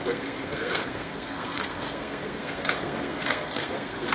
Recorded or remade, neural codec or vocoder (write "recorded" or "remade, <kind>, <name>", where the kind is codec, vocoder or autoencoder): remade, codec, SNAC